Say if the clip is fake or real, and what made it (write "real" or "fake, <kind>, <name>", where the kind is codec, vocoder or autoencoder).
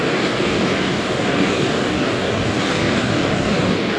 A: fake, codec, DAC